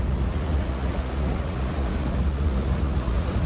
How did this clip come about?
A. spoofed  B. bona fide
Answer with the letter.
A